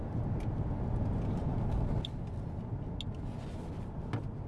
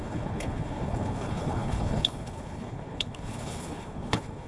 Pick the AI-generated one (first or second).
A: second